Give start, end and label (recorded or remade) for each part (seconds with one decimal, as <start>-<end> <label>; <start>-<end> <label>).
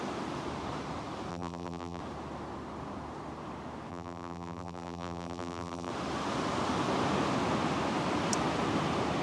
0.0-1.3 recorded; 1.3-2.0 remade; 2.0-3.9 recorded; 3.9-5.9 remade; 5.9-9.2 recorded